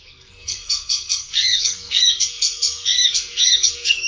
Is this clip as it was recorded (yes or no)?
no